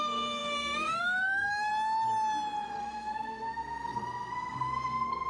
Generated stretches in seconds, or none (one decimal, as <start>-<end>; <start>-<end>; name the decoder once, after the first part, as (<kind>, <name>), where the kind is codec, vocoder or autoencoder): 0.0-1.7 (codec, SNAC); 2.8-5.3